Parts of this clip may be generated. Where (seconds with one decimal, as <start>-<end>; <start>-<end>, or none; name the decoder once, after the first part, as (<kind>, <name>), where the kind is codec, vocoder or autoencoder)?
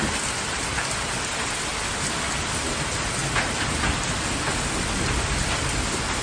none